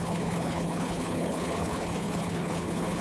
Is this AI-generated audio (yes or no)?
yes